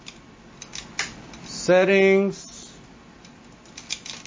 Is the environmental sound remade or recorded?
recorded